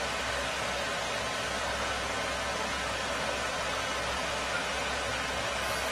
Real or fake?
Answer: real